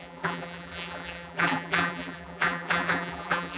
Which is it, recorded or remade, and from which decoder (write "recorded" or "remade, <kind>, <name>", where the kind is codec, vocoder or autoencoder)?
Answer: remade, vocoder, BigVGAN v2